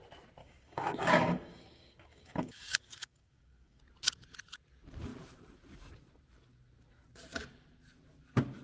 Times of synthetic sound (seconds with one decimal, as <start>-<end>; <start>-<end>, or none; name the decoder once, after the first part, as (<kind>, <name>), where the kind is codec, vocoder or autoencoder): 0.4-3.8 (codec, DAC)

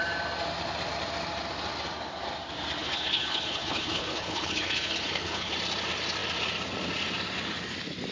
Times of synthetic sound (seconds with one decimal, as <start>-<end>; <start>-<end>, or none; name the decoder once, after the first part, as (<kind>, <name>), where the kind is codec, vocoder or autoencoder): 2.8-5.5 (codec, HILCodec)